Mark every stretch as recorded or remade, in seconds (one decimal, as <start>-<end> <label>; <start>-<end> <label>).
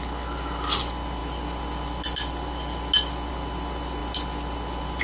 0.0-5.0 recorded